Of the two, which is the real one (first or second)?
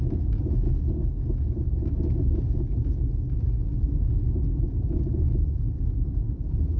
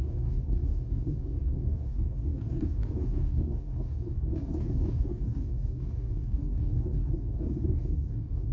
first